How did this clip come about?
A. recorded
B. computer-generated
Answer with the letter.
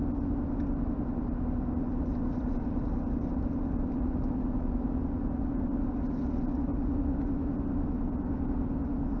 A